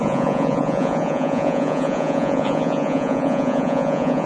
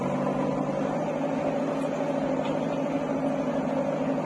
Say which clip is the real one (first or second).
second